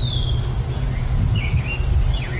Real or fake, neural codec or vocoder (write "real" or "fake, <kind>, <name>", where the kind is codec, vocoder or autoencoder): real